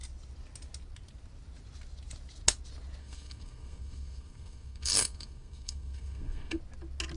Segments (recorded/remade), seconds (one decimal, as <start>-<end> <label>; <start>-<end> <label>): 0.0-3.0 recorded; 3.0-6.6 remade; 6.6-7.2 recorded